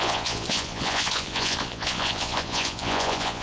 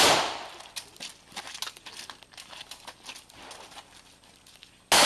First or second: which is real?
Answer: second